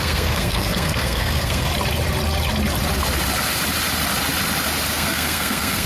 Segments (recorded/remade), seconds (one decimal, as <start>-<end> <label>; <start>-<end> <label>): 0.0-1.7 remade; 1.7-4.9 recorded; 4.9-5.9 remade